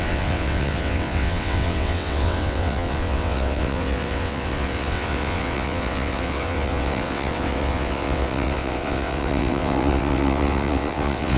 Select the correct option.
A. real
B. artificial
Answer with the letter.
B